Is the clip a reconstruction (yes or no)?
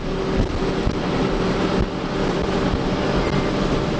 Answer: no